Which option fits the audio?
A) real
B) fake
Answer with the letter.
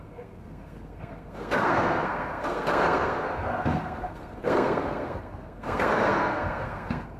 B